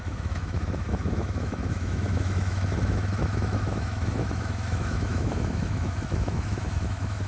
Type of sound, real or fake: fake